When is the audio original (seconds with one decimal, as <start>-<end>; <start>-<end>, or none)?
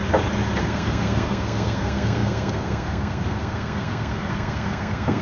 0.0-0.6